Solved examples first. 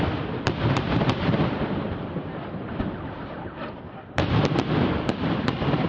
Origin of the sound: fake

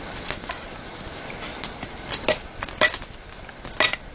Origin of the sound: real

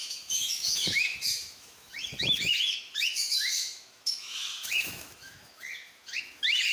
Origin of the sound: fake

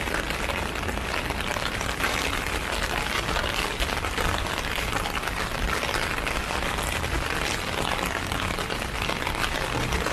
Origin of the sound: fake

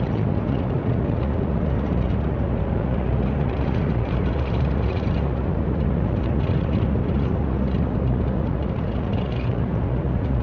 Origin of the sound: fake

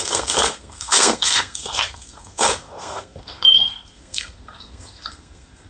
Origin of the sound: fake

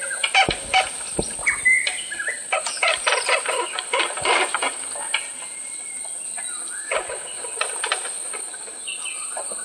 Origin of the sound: real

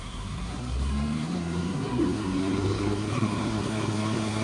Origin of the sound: fake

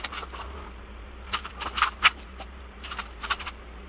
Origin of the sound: fake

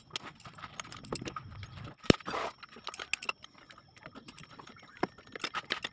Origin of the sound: real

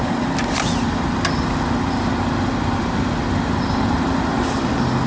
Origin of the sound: real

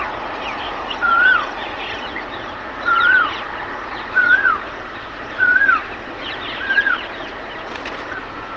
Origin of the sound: fake